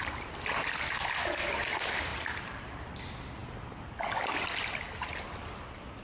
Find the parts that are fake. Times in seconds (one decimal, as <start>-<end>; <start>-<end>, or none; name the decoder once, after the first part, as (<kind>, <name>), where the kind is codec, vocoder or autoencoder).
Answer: 2.1-2.8 (vocoder, BigVGAN v2)

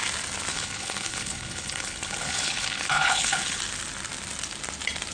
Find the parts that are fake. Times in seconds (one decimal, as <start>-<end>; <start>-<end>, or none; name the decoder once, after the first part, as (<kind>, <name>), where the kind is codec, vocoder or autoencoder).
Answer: 0.5-3.6 (codec, HILCodec)